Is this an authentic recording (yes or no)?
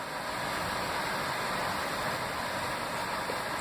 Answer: no